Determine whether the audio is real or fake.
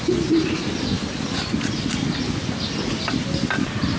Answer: real